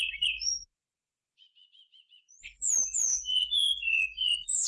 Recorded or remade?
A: remade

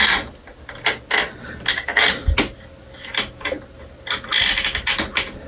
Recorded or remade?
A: recorded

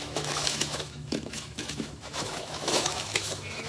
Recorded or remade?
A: remade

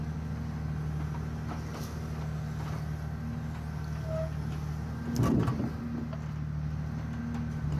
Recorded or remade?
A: recorded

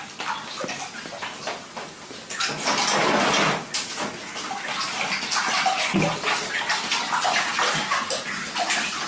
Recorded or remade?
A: recorded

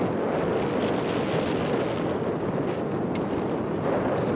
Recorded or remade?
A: recorded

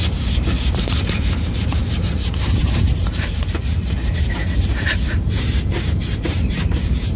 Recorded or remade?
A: remade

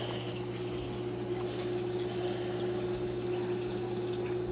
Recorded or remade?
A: recorded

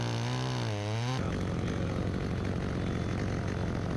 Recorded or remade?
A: recorded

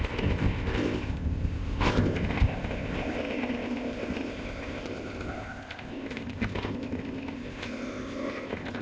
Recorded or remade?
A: remade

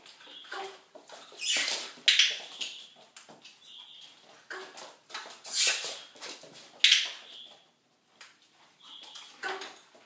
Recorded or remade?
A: recorded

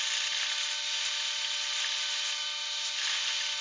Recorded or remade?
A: recorded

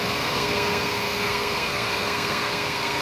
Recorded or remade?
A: remade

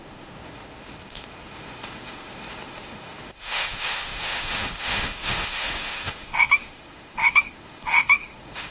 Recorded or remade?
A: remade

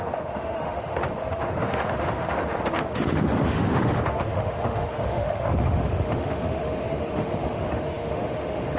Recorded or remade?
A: remade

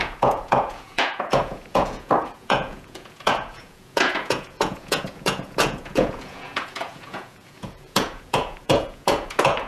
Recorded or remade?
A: remade